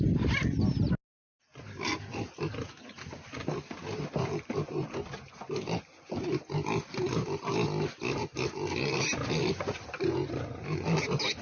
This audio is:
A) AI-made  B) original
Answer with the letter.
B